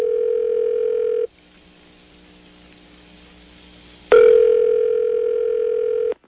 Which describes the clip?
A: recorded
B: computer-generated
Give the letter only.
A